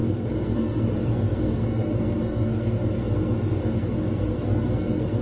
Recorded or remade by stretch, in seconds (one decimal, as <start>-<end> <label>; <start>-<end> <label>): 0.0-5.2 remade